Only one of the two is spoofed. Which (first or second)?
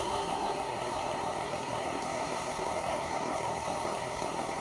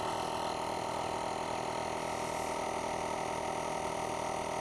first